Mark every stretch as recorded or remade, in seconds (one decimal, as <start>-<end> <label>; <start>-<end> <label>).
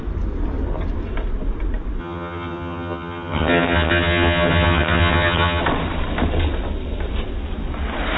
0.0-2.0 recorded; 2.0-5.6 remade; 5.6-8.2 recorded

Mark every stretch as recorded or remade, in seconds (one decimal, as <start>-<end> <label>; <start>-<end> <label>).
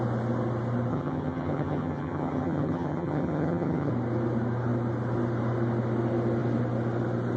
0.0-0.9 recorded; 0.9-3.9 remade; 3.9-7.4 recorded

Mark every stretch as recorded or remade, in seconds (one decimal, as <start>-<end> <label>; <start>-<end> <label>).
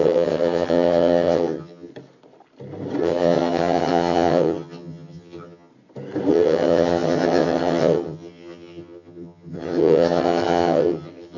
0.0-1.9 remade; 1.9-3.0 recorded; 3.0-5.7 remade; 5.7-6.3 recorded; 6.3-11.4 remade